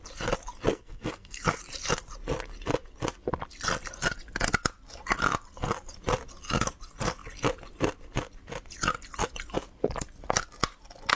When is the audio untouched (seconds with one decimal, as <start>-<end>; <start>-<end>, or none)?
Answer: 0.0-0.7; 1.6-11.2